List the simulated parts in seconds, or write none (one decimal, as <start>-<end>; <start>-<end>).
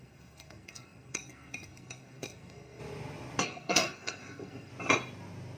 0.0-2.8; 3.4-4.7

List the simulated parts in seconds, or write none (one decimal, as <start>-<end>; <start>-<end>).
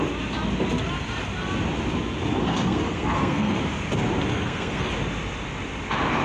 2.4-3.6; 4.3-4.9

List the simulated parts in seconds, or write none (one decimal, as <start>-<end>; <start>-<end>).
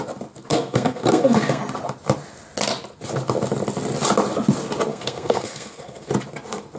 0.5-1.6; 4.9-6.1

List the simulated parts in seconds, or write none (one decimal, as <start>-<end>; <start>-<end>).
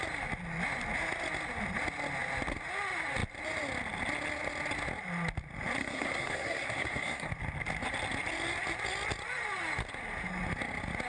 5.8-7.3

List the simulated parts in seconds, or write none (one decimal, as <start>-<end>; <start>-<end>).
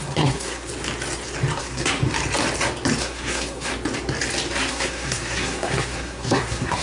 0.0-0.7; 1.6-2.0; 3.0-3.7; 4.7-6.8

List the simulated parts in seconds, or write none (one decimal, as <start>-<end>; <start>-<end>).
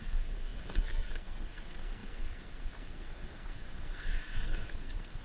0.0-5.2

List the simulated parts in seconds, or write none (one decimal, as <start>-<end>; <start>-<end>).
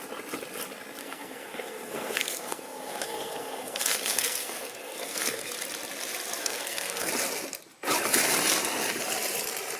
1.0-5.5; 6.4-7.1